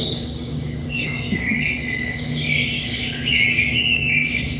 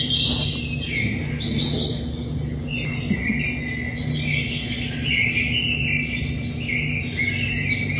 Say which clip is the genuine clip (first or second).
second